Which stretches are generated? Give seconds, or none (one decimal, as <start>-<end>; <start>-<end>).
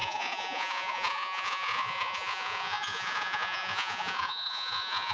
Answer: 0.0-5.1